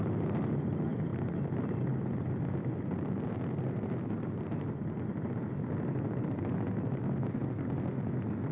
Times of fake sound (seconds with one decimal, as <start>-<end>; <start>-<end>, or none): none